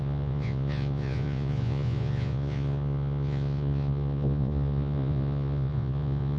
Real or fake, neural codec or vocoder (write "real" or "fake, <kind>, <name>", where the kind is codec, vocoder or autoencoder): fake, vocoder, Vocos